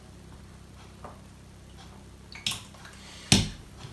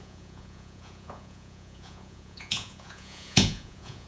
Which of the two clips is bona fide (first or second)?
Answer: first